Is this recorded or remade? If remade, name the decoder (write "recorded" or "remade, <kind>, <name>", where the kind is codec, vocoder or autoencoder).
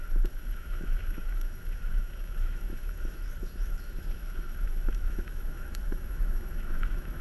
remade, autoencoder, DAC-VAE